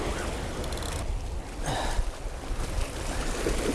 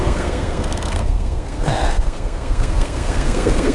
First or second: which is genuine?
first